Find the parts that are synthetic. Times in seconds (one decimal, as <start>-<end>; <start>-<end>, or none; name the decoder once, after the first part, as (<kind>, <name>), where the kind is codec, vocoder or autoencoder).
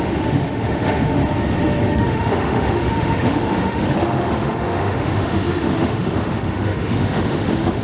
0.0-1.2 (autoencoder, DAC-VAE); 1.8-7.8